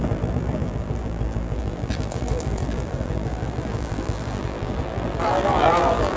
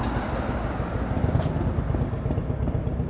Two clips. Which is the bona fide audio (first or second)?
second